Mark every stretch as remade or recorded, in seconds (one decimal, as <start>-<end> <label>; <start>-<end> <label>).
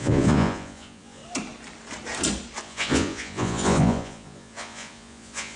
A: 0.0-1.2 remade; 1.2-2.6 recorded; 2.6-5.6 remade